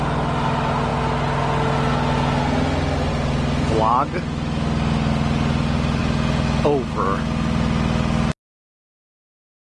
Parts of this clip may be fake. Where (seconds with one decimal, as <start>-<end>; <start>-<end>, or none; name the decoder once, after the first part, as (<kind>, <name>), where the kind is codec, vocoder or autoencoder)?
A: none